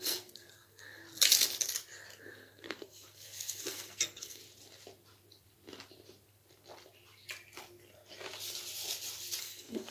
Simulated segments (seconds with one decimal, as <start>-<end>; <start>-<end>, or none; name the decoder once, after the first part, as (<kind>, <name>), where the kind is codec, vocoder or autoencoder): 0.0-1.0 (codec, SNAC); 2.2-4.4; 9.4-9.9